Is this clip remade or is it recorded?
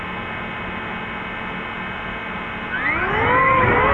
recorded